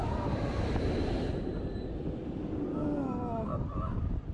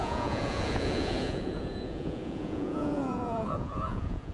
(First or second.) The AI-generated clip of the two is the second